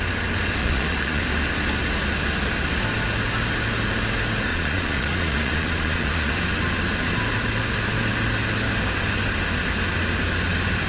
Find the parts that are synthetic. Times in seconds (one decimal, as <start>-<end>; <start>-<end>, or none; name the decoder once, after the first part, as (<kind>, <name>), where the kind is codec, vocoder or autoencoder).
0.6-1.2 (vocoder, Vocos); 4.5-6.3